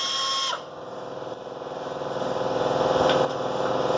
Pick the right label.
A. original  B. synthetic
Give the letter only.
A